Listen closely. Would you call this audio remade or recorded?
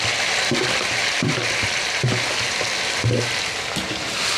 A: recorded